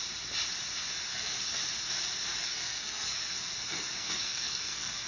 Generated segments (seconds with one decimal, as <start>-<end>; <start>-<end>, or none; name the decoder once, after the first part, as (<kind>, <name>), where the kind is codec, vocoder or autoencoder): 1.1-1.6 (codec, SNAC); 2.4-5.1